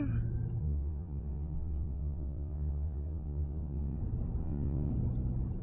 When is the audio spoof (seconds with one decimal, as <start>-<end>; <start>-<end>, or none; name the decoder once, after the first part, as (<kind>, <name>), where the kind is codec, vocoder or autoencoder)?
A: 0.6-4.0 (vocoder, WaveNeXt); 4.4-4.9